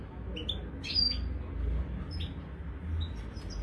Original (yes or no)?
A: yes